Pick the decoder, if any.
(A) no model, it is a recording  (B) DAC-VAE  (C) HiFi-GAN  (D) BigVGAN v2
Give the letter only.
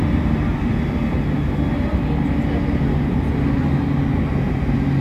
A